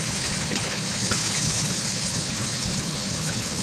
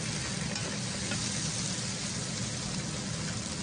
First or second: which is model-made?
first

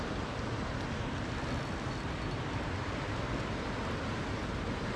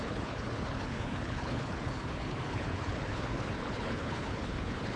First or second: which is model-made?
second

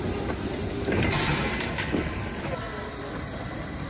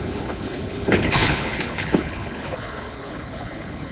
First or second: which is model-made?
second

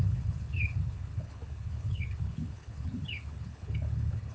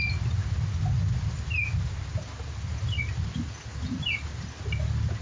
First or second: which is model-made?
first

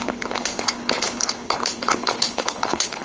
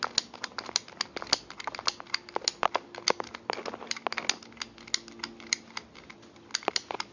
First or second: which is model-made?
first